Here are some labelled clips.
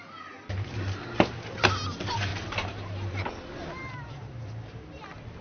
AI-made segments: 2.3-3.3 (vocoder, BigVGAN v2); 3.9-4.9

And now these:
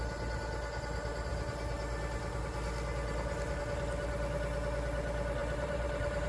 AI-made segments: 5.4-6.3 (vocoder, BigVGAN v2)